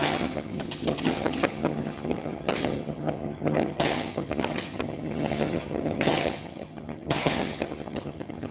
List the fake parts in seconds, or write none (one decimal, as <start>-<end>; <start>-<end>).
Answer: 0.0-8.5